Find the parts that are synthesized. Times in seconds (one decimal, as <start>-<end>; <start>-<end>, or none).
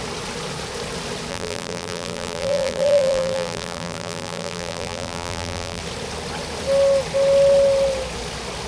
1.3-5.8